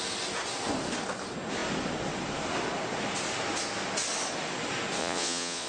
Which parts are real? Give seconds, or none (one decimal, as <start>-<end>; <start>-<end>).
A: 0.0-5.0